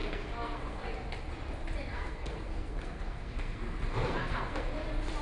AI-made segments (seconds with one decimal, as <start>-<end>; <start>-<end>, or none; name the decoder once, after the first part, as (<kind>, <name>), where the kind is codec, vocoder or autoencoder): 0.0-0.9 (codec, SNAC); 1.9-4.7